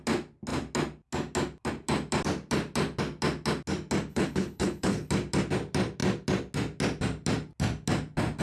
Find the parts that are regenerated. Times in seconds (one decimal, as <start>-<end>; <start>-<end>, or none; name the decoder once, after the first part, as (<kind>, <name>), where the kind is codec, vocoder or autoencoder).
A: 4.1-5.1 (codec, HILCodec)